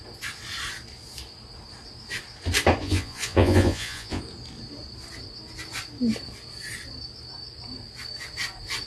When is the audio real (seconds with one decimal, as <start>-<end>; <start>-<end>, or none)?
0.0-2.8; 4.2-8.9

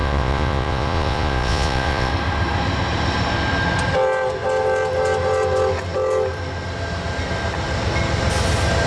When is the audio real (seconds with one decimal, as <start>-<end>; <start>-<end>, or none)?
2.1-8.9

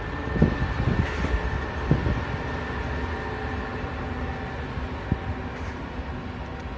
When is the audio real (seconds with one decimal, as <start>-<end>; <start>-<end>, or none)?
0.0-6.8